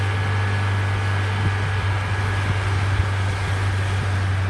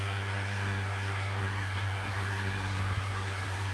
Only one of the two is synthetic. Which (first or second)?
second